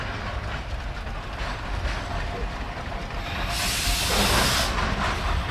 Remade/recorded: recorded